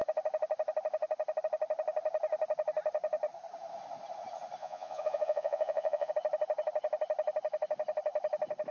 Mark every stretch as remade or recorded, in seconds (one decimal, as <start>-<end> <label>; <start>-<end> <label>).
0.0-4.6 recorded; 4.6-6.1 remade; 6.1-8.7 recorded

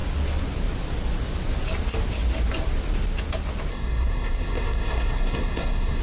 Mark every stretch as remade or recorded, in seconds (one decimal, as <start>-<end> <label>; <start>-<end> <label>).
0.0-3.7 recorded; 3.7-6.0 remade

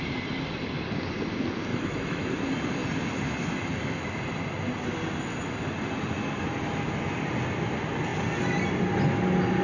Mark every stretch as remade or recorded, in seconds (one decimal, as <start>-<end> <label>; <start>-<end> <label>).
0.0-1.7 recorded; 1.7-2.3 remade; 2.3-9.6 recorded

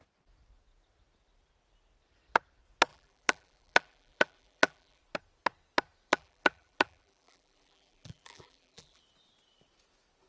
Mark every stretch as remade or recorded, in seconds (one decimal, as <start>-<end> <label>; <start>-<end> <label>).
0.0-2.9 recorded; 2.9-5.0 remade; 5.0-6.1 recorded; 6.1-9.0 remade; 9.0-10.3 recorded